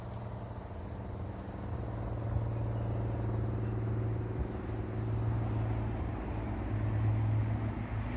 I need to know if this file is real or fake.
real